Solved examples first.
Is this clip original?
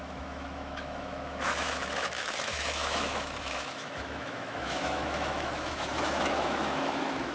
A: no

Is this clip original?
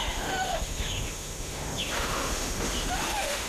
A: no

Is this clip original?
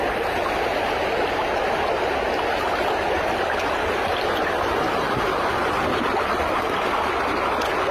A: yes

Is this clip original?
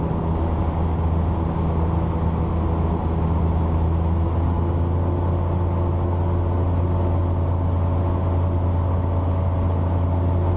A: yes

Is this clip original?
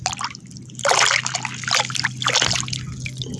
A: yes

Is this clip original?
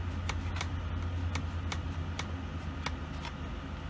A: yes